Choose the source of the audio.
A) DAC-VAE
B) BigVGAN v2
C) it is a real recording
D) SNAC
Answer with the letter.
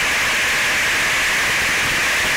C